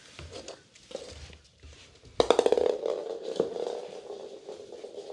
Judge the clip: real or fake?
real